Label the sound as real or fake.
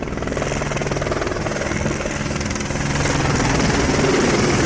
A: real